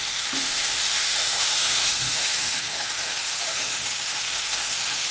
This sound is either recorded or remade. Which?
remade